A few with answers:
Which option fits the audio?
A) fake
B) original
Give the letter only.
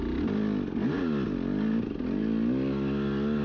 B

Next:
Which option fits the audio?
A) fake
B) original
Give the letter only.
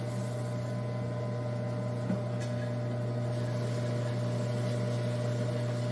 B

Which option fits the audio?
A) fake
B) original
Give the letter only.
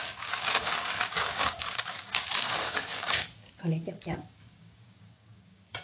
A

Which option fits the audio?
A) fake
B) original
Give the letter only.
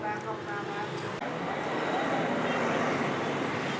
B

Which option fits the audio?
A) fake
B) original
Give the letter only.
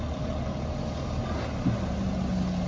B